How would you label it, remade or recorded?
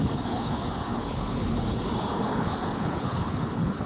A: remade